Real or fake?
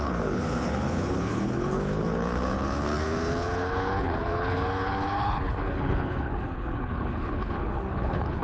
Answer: fake